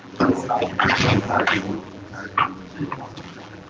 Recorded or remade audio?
remade